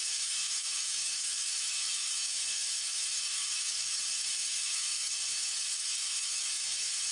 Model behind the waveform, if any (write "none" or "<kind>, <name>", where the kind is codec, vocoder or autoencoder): autoencoder, DAC-VAE